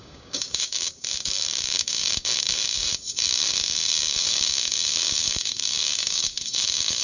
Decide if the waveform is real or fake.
fake